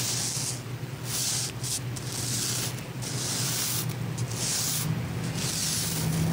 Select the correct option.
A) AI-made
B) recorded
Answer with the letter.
B